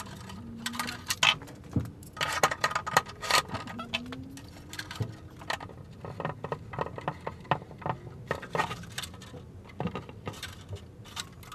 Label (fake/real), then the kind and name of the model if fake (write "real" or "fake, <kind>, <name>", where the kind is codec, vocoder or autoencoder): real